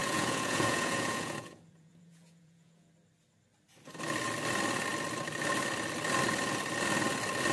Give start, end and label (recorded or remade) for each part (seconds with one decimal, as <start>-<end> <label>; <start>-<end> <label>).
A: 0.0-2.9 remade; 2.9-7.5 recorded